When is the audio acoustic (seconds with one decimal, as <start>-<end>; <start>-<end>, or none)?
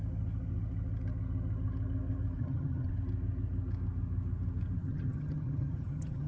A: 0.0-2.4; 2.9-4.8